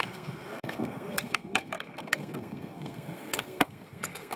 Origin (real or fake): fake